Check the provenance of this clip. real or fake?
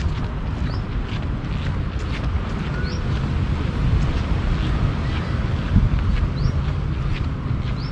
real